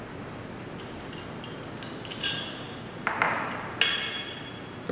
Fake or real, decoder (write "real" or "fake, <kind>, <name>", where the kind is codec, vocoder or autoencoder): real